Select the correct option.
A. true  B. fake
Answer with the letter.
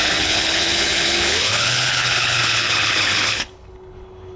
B